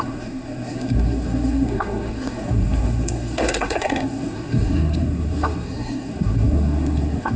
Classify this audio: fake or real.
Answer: fake